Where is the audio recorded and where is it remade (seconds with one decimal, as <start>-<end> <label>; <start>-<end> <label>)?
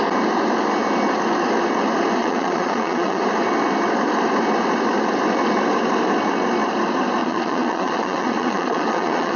0.0-2.2 recorded; 2.2-3.2 remade; 3.2-7.2 recorded; 7.2-9.4 remade